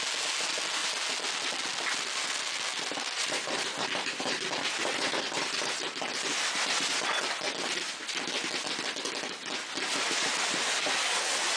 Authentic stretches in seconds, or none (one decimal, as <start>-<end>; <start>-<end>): 0.0-3.7; 4.4-11.6